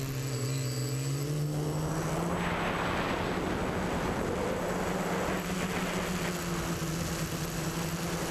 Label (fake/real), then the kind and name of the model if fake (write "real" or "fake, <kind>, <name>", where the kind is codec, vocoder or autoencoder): real